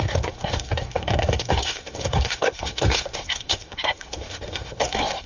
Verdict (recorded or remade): remade